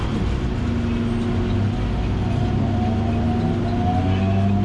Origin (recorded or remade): recorded